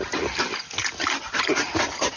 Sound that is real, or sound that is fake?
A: real